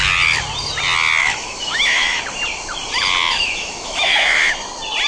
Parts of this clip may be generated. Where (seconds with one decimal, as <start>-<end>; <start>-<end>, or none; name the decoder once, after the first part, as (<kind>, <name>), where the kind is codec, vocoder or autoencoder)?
1.2-2.2 (autoencoder, DAC-VAE); 3.3-4.5